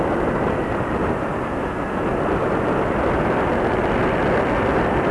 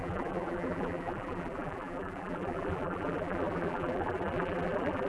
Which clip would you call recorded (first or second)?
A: first